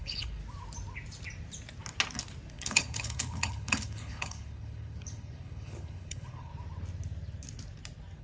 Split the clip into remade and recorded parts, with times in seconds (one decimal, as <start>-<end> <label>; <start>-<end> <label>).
0.0-0.4 remade; 0.4-2.5 recorded; 2.5-6.5 remade; 6.5-8.2 recorded